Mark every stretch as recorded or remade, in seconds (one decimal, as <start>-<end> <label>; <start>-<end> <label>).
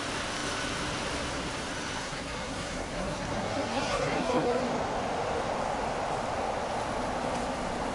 0.0-2.0 recorded; 2.0-4.6 remade; 4.6-7.9 recorded